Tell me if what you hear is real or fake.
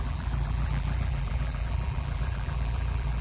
fake